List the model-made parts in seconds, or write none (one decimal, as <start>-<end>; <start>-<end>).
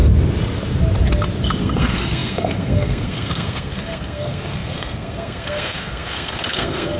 1.6-7.0